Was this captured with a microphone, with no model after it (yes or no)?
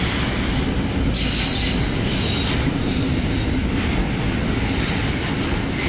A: yes